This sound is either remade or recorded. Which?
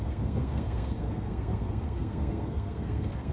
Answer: remade